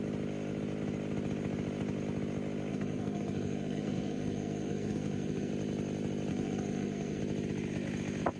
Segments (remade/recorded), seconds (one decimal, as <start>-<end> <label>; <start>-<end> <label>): 0.0-2.7 recorded; 2.7-5.5 remade; 5.5-6.3 recorded; 6.3-7.2 remade; 7.2-8.4 recorded